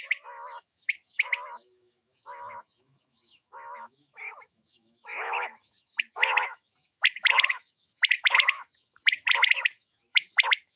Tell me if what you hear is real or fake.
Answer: fake